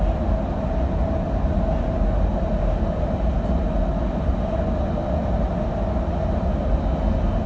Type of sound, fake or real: real